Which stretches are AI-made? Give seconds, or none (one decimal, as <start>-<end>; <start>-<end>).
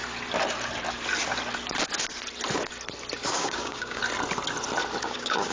3.3-4.0; 5.0-5.5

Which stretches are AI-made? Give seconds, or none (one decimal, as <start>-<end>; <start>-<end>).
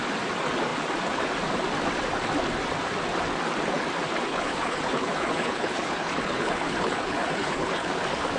4.3-7.9